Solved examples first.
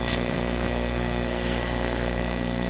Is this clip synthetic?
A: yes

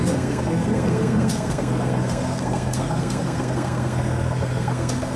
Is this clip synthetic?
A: yes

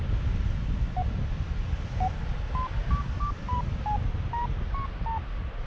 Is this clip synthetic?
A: no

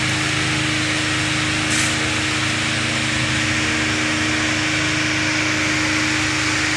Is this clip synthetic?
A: no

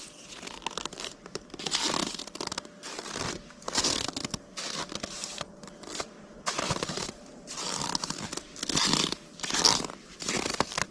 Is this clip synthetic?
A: no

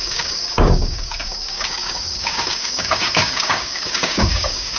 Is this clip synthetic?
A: yes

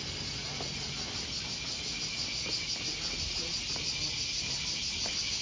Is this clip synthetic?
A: no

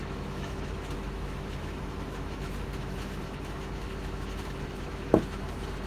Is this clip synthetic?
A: yes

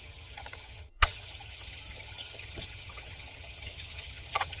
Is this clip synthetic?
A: yes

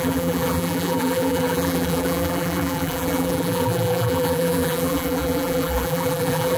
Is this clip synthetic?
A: yes